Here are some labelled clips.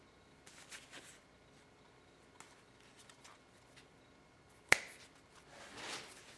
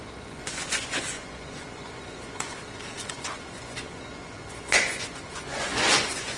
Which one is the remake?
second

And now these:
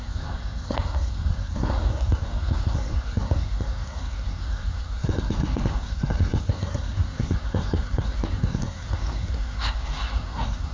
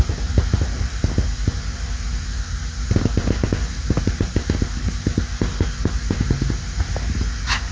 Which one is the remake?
first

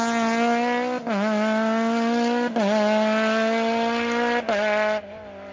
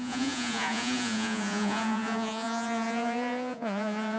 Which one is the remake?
second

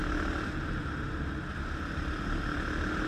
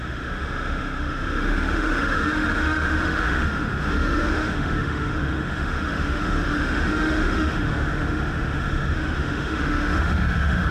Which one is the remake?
second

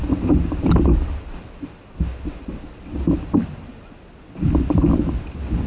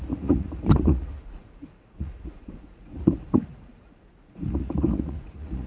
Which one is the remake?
second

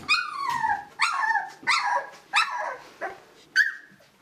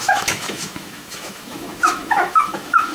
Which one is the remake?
second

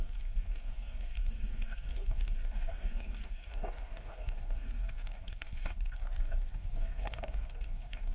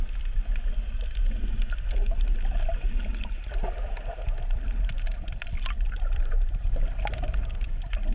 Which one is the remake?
first